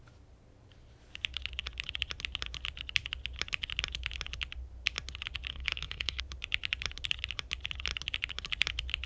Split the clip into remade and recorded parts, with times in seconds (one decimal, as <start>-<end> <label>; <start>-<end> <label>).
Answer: 0.0-5.5 recorded; 5.5-6.2 remade; 6.2-9.1 recorded